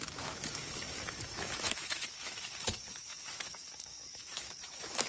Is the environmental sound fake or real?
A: fake